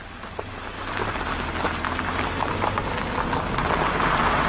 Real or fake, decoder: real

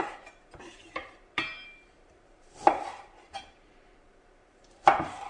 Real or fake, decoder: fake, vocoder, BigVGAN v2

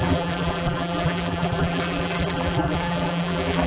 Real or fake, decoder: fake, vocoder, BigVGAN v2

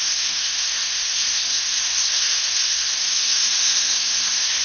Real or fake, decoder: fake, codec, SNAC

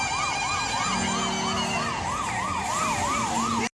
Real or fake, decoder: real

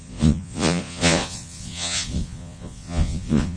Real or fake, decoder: fake, vocoder, Vocos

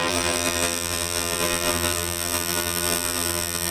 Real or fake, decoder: fake, vocoder, BigVGAN v2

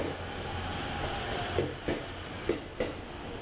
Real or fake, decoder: real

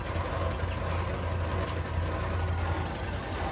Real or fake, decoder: real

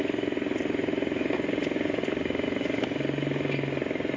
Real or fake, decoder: real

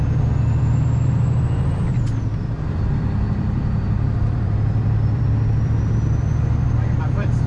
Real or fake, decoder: fake, vocoder, BigVGAN v2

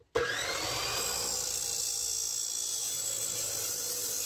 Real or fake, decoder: real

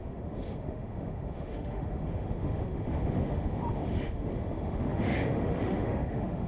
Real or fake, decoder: fake, autoencoder, DAC-VAE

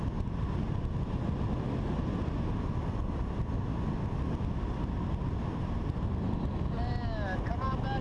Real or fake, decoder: real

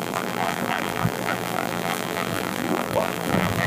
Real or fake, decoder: fake, vocoder, BigVGAN v2